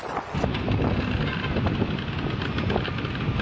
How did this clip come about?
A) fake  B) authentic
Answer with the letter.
B